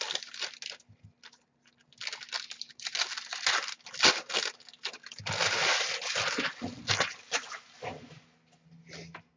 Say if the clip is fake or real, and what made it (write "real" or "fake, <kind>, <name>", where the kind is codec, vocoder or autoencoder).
real